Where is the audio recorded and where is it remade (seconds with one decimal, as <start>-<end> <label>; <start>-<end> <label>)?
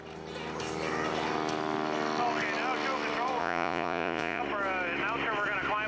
0.0-3.4 recorded; 3.4-4.4 remade; 4.4-5.9 recorded